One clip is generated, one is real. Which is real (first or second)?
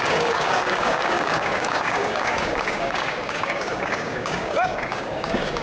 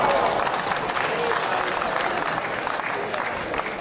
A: second